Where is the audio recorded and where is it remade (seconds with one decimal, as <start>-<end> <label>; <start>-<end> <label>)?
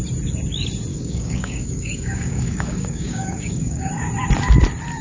0.0-0.9 recorded; 0.9-3.9 remade; 3.9-5.0 recorded